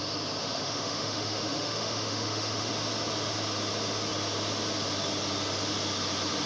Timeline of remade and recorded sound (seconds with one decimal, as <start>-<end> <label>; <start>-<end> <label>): 0.0-0.4 recorded; 0.4-2.7 remade; 2.7-6.5 recorded